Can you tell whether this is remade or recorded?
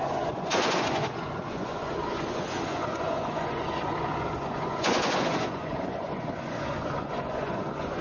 remade